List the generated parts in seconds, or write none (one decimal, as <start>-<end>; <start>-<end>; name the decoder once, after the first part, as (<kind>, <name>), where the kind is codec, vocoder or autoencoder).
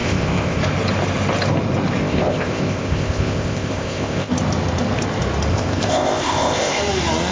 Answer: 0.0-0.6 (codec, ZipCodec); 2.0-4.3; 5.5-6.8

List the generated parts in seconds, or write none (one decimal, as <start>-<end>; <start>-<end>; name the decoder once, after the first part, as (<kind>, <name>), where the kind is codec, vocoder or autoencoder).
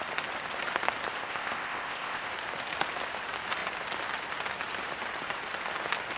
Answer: 1.2-2.3 (codec, ZipCodec)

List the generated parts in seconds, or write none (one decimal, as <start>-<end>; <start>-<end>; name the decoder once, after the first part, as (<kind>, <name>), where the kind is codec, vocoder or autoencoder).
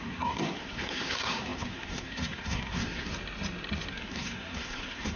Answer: 0.0-3.1 (codec, SNAC); 3.9-5.2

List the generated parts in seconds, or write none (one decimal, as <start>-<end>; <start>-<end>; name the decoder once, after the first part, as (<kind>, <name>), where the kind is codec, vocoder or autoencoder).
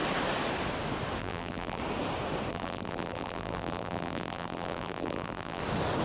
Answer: 1.2-1.8 (vocoder, BigVGAN v2); 2.5-5.6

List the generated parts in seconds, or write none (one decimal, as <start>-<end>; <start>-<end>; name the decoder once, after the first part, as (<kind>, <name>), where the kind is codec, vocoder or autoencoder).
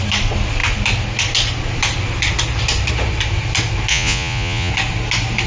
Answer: 3.9-4.7 (vocoder, Vocos)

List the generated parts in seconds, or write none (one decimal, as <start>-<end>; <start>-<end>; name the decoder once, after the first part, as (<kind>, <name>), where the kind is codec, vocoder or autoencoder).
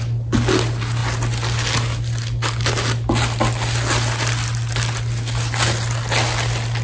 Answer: none